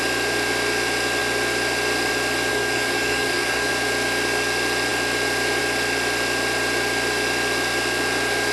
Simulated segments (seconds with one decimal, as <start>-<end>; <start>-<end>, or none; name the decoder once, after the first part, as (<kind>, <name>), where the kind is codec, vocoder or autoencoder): 2.5-3.7 (codec, DAC)